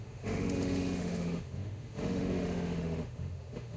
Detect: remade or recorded remade